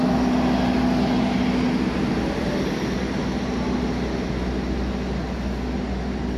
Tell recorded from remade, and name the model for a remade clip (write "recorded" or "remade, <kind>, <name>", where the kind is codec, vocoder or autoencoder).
recorded